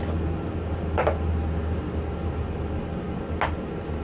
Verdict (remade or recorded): recorded